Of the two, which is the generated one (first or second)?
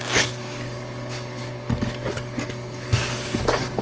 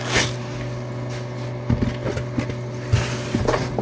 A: first